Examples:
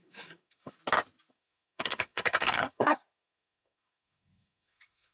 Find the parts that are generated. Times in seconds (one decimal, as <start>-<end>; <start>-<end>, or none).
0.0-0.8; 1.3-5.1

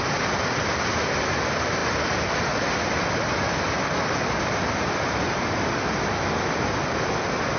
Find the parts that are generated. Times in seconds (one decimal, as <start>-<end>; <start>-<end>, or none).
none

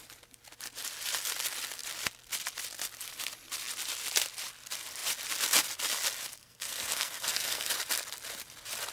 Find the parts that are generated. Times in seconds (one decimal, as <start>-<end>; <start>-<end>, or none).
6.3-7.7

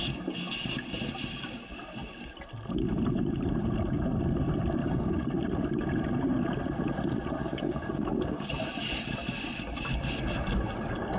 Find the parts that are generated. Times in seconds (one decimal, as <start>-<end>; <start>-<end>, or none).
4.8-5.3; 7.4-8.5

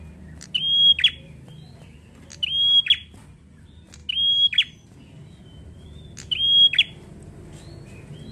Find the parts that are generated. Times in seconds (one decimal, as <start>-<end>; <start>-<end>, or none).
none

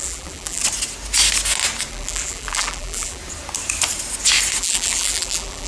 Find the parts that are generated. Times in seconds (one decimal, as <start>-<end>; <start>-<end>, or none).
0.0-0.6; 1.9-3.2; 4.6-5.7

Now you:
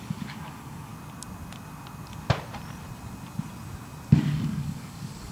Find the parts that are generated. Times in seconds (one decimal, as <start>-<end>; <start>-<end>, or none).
0.0-0.9; 4.1-5.3